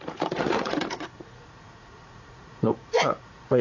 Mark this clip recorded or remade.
remade